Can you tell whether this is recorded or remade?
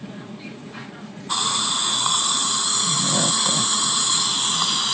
remade